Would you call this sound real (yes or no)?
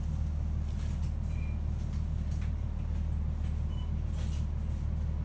yes